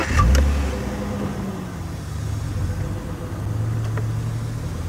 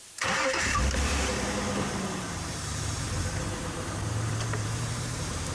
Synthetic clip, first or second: second